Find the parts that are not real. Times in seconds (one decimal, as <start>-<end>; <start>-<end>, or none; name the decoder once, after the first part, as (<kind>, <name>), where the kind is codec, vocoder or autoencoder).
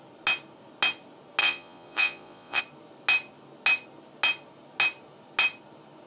1.4-2.6 (vocoder, Vocos)